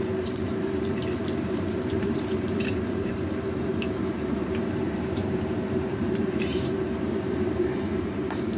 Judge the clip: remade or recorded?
remade